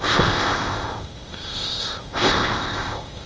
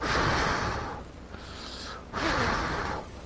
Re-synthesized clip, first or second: first